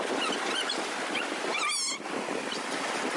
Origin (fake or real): real